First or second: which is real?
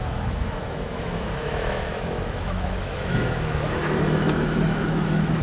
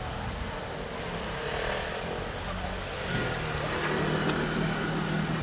second